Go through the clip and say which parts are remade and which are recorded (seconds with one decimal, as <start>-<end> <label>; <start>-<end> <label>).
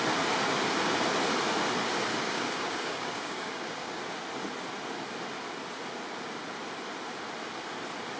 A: 0.0-2.1 recorded; 2.1-4.0 remade; 4.0-8.2 recorded